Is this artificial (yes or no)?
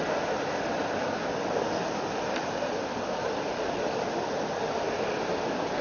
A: no